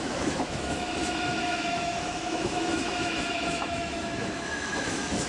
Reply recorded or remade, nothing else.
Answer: remade